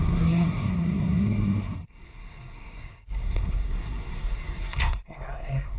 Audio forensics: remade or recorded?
remade